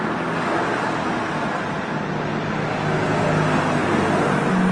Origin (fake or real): real